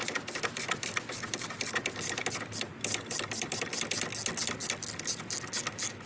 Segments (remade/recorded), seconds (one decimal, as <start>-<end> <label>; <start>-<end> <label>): 0.0-3.7 remade; 3.7-4.6 recorded; 4.6-5.2 remade; 5.2-6.1 recorded